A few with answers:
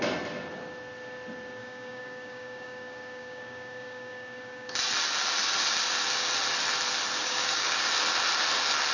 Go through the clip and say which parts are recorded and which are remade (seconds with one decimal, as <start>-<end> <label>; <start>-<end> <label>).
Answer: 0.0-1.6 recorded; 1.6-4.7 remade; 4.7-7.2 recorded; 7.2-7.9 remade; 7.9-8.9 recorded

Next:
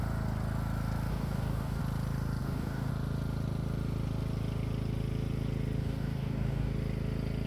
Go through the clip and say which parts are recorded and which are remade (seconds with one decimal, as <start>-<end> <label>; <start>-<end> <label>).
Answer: 0.0-1.1 recorded; 1.1-1.8 remade; 1.8-2.4 recorded; 2.4-2.9 remade; 2.9-5.8 recorded; 5.8-6.7 remade; 6.7-7.5 recorded

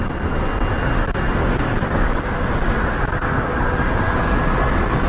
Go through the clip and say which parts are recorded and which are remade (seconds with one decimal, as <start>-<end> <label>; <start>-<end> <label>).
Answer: 0.0-1.4 recorded; 1.4-2.5 remade; 2.5-3.2 recorded; 3.2-4.3 remade; 4.3-5.1 recorded

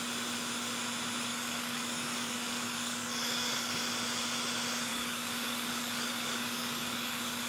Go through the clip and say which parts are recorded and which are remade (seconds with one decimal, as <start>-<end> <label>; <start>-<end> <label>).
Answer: 0.0-1.3 recorded; 1.3-3.7 remade; 3.7-4.9 recorded; 4.9-7.5 remade

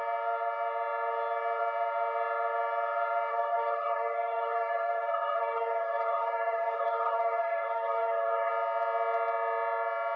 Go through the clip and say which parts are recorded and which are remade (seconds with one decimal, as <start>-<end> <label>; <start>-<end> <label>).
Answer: 0.0-3.3 recorded; 3.3-8.5 remade; 8.5-10.2 recorded

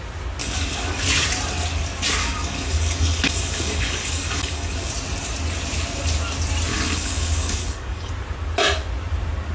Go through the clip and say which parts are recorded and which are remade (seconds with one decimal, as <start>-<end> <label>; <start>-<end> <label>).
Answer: 0.0-0.4 recorded; 0.4-1.0 remade; 1.0-2.2 recorded; 2.2-4.9 remade; 4.9-6.7 recorded; 6.7-8.1 remade; 8.1-9.5 recorded